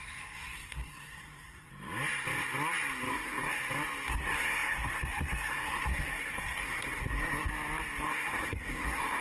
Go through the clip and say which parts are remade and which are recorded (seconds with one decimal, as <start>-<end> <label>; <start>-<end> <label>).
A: 0.0-1.7 remade; 1.7-3.1 recorded; 3.1-3.6 remade; 3.6-4.1 recorded; 4.1-7.5 remade; 7.5-8.0 recorded; 8.0-9.2 remade